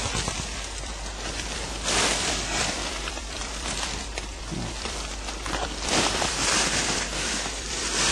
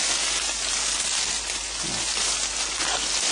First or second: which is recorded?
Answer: second